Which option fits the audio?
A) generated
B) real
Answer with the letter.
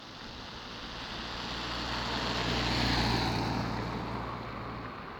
B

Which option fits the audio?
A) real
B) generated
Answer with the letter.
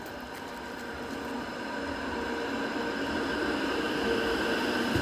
A